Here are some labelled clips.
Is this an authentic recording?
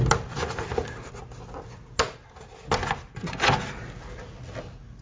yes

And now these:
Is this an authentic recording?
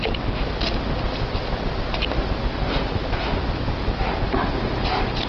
yes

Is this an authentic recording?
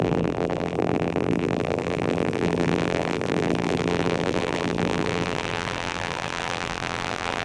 no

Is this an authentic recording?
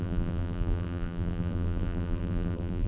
no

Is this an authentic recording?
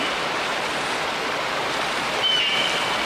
no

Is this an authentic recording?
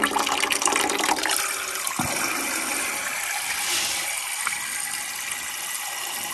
yes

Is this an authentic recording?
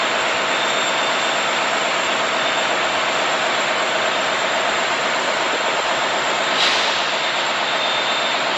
yes